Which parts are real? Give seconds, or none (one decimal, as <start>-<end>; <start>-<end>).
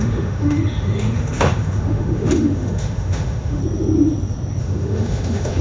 3.6-4.6